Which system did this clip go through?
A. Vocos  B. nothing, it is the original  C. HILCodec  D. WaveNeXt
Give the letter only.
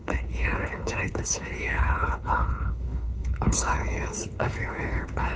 C